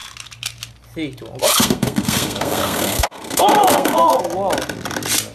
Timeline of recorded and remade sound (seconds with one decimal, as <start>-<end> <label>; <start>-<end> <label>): 0.0-1.5 recorded; 1.5-4.2 remade; 4.2-5.3 recorded